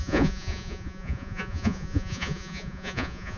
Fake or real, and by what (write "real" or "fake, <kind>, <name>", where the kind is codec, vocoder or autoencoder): fake, vocoder, Vocos